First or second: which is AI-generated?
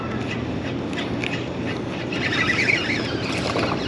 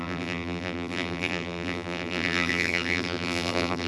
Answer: second